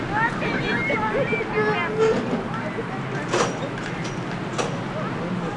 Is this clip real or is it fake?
real